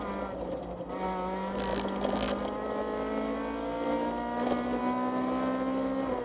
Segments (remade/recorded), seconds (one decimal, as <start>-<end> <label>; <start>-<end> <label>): 0.0-6.2 recorded

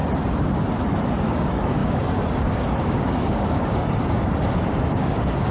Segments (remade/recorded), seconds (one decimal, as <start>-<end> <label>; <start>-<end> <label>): 0.0-1.2 recorded; 1.2-5.5 remade

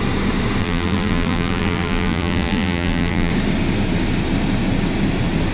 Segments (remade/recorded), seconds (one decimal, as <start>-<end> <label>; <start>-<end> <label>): 0.0-0.6 recorded; 0.6-3.3 remade; 3.3-5.5 recorded

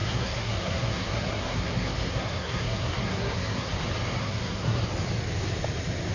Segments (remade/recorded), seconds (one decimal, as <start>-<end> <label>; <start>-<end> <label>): 0.0-3.7 remade; 3.7-4.2 recorded; 4.2-4.8 remade; 4.8-6.1 recorded

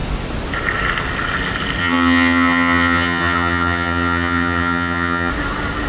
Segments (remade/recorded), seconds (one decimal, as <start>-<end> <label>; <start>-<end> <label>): 0.0-1.8 recorded; 1.8-5.3 remade; 5.3-5.9 recorded

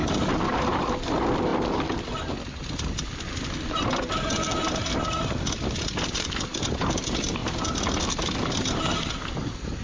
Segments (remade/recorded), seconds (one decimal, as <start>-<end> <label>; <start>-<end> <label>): 0.0-9.8 recorded